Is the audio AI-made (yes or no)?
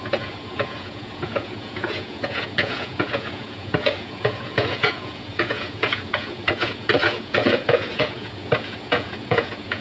yes